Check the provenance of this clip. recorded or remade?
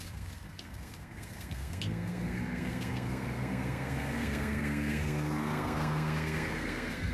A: remade